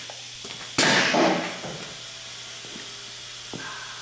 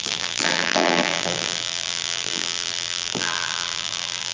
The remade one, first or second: second